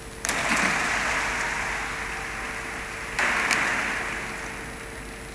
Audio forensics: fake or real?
real